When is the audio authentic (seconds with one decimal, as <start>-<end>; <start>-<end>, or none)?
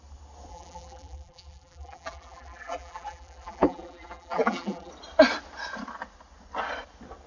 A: 0.0-0.5; 4.9-7.3